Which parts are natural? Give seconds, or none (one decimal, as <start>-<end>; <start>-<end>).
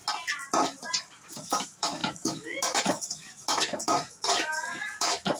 0.0-1.0